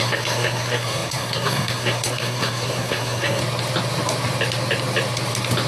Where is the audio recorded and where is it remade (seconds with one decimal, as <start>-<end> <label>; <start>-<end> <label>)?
0.0-3.4 remade; 3.4-5.7 recorded